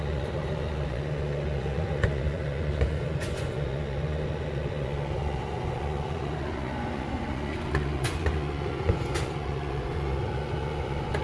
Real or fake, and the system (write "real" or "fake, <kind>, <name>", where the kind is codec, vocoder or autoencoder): fake, vocoder, Vocos